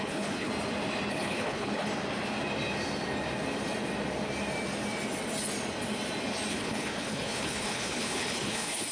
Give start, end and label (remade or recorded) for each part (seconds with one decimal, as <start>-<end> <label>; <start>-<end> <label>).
0.0-0.5 remade; 0.5-1.1 recorded; 1.1-1.9 remade; 1.9-6.5 recorded; 6.5-8.9 remade